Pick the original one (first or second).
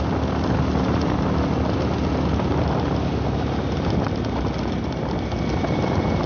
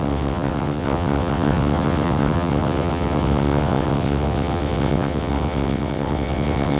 first